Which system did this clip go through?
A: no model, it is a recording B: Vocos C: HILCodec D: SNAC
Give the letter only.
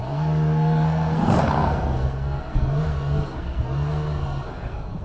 D